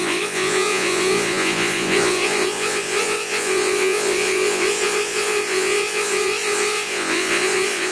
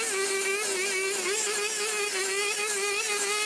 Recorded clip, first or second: second